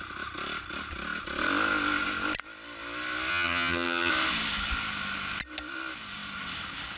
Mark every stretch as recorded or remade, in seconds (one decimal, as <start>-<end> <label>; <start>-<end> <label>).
0.0-3.3 recorded; 3.3-4.1 remade; 4.1-7.0 recorded